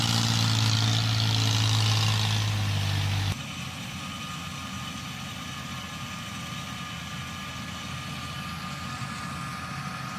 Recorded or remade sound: recorded